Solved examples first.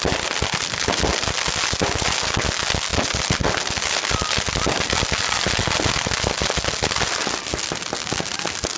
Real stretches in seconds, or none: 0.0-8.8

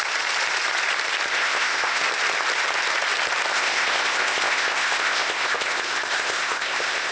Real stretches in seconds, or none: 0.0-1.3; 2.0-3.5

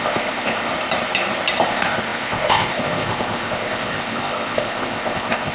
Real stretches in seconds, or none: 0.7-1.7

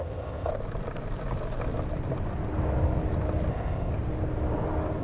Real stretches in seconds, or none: 0.5-3.5; 3.9-5.0

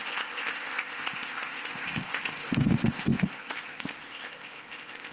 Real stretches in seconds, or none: none

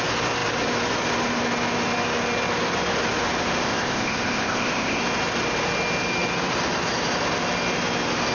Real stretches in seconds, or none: 0.0-3.6; 5.0-8.3

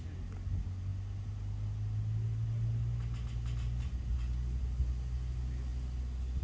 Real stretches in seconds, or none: 0.0-6.4